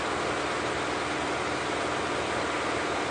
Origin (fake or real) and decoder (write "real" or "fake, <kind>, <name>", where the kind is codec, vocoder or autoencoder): real